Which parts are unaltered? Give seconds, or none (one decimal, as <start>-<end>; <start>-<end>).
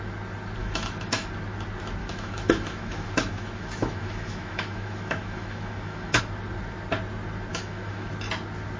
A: 0.0-0.6; 1.3-2.0; 6.2-7.5; 8.1-8.8